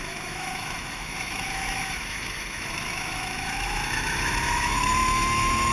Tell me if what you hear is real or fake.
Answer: fake